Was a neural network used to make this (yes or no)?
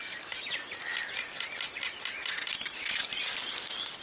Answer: no